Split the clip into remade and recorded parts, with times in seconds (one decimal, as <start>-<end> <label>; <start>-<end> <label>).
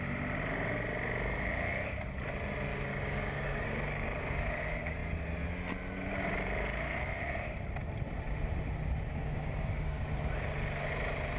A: 0.0-2.7 recorded; 2.7-4.5 remade; 4.5-9.1 recorded; 9.1-10.0 remade; 10.0-11.4 recorded